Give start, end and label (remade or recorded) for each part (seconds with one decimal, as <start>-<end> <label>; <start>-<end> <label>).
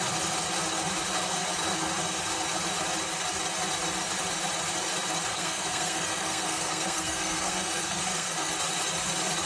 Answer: 0.0-5.3 recorded; 5.3-8.5 remade; 8.5-9.5 recorded